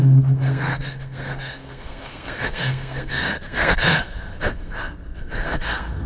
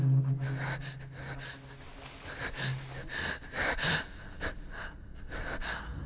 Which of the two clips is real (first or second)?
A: second